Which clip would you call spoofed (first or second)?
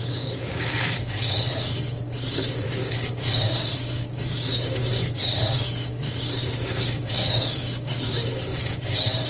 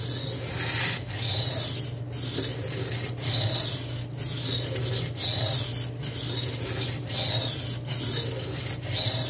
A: first